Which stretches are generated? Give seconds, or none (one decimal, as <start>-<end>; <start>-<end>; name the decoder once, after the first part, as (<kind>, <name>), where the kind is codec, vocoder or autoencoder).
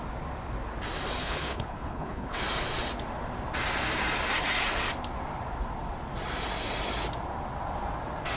1.2-2.4 (codec, HILCodec)